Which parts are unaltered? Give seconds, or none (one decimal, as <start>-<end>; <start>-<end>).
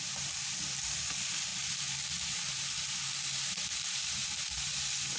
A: 1.5-3.0; 4.2-4.7